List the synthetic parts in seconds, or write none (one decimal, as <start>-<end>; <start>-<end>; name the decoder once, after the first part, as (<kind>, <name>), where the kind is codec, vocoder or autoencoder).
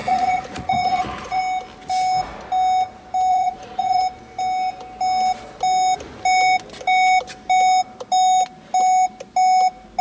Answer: 0.0-1.4 (vocoder, Vocos); 3.3-4.0